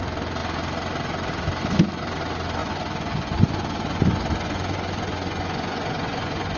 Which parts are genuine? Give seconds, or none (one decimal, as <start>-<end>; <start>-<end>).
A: 0.0-2.6